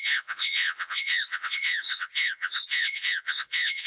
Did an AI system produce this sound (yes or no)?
yes